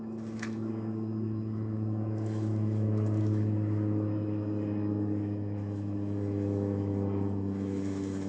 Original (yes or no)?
no